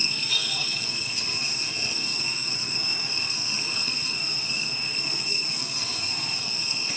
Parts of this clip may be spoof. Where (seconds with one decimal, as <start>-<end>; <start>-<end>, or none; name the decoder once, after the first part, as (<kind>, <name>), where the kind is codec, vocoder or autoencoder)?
0.0-7.0 (codec, SNAC)